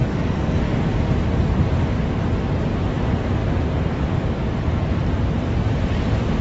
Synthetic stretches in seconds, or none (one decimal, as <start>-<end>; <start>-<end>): 0.0-0.6